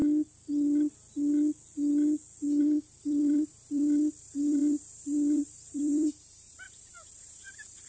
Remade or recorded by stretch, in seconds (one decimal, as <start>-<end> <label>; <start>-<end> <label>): 0.0-2.6 recorded; 2.6-7.9 remade